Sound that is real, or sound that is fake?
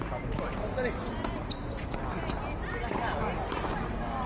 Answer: real